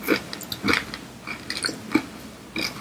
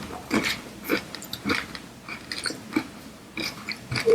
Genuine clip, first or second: first